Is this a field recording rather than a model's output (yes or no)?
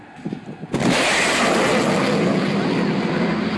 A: yes